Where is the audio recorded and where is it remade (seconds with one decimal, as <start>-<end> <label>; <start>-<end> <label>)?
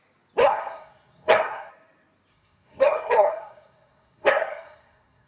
0.0-0.4 recorded; 0.4-1.7 remade; 1.7-2.3 recorded; 2.3-5.3 remade